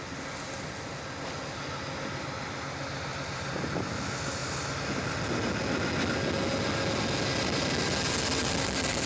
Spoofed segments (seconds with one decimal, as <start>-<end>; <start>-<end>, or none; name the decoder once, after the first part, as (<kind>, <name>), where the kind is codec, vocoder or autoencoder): none